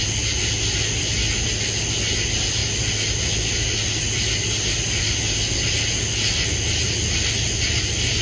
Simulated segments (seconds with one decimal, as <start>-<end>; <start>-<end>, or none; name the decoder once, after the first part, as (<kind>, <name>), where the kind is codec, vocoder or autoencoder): none

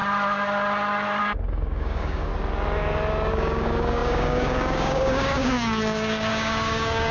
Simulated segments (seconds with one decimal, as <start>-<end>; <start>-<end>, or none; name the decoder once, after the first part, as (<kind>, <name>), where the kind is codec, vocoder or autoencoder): 1.2-2.3 (codec, DAC); 3.3-7.1

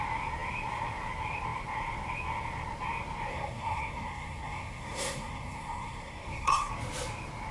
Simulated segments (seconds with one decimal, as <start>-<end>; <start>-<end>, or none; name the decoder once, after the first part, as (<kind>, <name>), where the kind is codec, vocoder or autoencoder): 3.3-6.7 (codec, SNAC)

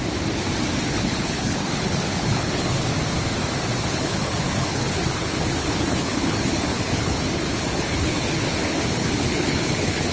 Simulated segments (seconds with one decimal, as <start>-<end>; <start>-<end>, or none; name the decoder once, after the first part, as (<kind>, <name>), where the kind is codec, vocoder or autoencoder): 0.9-2.9 (codec, HILCodec); 3.8-10.1

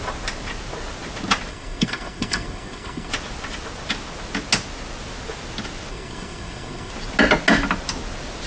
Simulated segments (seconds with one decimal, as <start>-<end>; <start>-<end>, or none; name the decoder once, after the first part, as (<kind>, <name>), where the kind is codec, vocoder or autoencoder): 1.5-3.1 (codec, SNAC); 5.9-6.9

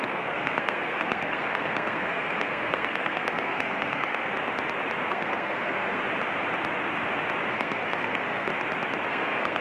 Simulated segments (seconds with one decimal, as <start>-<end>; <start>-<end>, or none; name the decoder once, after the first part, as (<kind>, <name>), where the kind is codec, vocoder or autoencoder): 0.0-4.3 (codec, SNAC); 5.1-6.0; 7.5-8.5; 9.1-9.6

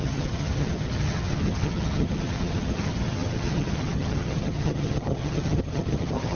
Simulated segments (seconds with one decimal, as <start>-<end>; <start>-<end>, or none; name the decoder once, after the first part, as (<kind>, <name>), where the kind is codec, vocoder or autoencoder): 0.0-6.3 (vocoder, HiFi-GAN)

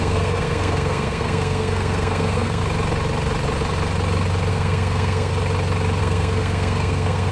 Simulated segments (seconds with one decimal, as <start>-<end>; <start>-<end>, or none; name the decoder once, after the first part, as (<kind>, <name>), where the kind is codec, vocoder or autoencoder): 0.0-2.6 (codec, SNAC); 4.5-5.3; 6.0-7.3